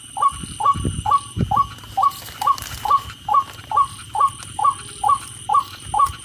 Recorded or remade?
recorded